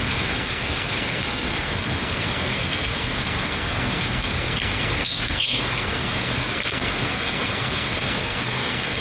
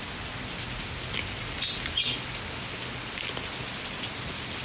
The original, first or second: second